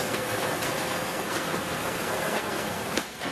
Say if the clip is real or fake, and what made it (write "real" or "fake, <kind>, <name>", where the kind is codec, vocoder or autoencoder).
fake, codec, SNAC